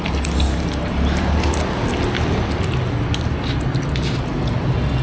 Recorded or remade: recorded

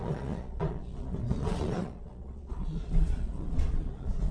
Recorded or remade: remade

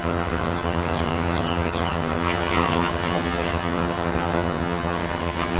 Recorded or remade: remade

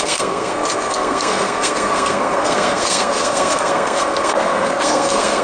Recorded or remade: remade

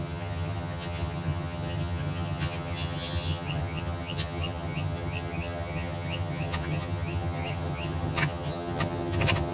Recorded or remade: remade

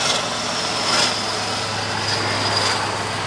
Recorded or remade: recorded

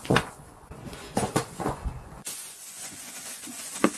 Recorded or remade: remade